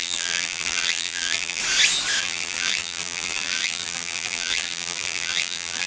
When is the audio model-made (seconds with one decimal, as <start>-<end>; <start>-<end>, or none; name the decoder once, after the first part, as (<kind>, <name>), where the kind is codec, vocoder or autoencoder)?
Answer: 0.0-1.6 (vocoder, BigVGAN v2); 2.2-5.9

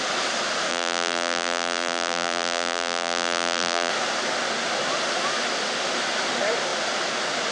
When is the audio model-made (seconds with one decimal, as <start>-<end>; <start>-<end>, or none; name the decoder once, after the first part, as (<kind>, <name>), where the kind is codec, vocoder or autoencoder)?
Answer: 0.7-3.9 (vocoder, BigVGAN v2)

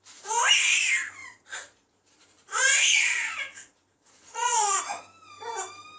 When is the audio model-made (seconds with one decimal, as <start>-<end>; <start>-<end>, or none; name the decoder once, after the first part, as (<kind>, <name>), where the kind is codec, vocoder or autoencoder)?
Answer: 1.2-4.8 (vocoder, Vocos)

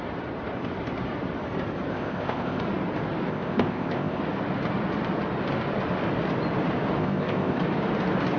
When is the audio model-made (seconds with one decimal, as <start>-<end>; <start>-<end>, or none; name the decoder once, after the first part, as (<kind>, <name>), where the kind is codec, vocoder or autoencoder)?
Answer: 1.9-2.6 (codec, ZipCodec); 3.3-4.2; 7.0-7.6

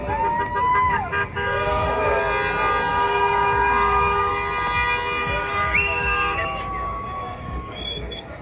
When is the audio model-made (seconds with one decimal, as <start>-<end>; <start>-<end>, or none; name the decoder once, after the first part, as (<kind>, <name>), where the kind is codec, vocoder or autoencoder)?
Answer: 0.7-2.2 (codec, DAC); 2.9-4.3; 5.2-8.4

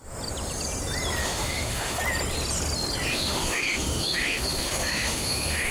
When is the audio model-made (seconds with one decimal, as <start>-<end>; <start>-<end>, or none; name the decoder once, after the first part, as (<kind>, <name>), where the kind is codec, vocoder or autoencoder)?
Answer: 1.2-2.0 (autoencoder, DAC-VAE); 3.1-5.7